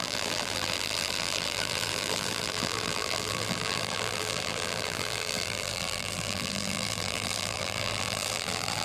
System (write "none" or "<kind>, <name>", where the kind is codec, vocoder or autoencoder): vocoder, BigVGAN v2